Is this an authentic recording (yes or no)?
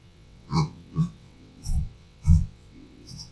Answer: no